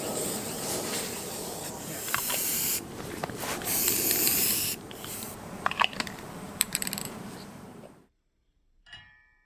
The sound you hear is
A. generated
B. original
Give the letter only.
A